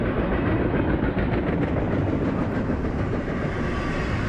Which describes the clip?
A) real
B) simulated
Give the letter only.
A